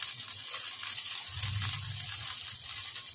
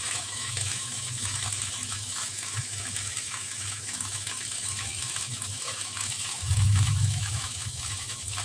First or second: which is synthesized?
second